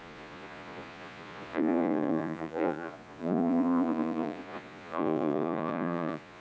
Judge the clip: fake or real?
fake